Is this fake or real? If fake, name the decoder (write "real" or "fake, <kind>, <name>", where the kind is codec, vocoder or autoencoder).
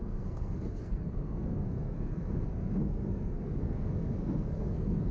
fake, codec, SNAC